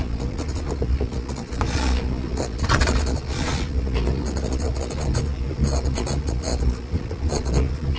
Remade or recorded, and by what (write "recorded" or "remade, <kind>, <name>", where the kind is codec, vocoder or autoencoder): remade, vocoder, Vocos